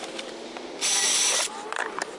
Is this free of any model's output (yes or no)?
yes